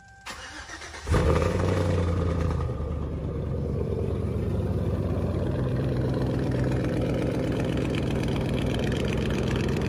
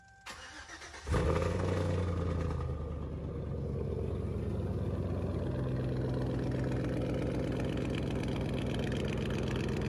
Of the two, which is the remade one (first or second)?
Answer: first